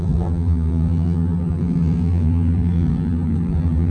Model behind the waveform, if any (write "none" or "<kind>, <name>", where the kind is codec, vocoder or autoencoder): vocoder, BigVGAN v2